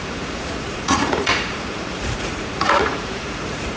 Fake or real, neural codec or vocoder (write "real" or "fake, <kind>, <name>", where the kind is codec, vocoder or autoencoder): fake, vocoder, Vocos